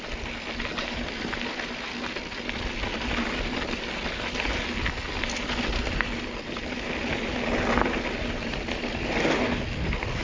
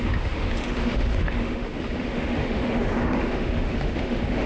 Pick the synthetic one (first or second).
second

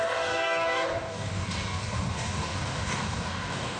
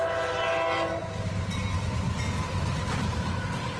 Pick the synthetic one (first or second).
first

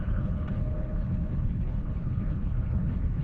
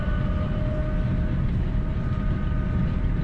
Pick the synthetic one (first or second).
first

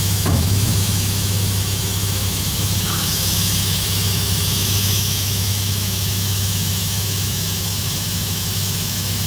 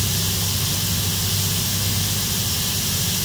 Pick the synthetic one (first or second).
first